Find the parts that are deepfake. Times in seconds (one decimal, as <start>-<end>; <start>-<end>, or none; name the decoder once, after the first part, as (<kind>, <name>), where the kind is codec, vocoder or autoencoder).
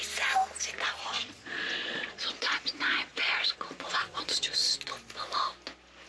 1.0-4.7 (vocoder, Vocos)